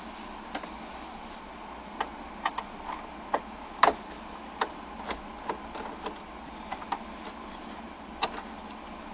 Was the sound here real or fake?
real